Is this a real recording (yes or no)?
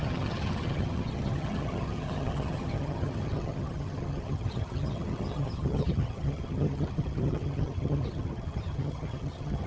no